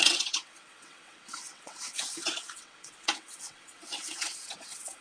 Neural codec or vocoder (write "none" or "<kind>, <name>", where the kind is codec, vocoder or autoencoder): vocoder, WaveNeXt